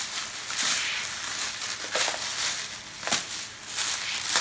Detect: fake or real real